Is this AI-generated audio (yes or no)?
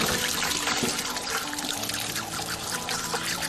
yes